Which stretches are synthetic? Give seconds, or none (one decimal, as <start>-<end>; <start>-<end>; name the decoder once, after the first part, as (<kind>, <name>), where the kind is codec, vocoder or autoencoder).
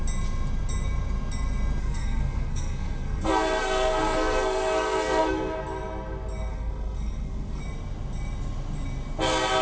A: 1.8-5.6 (codec, SNAC); 6.5-7.6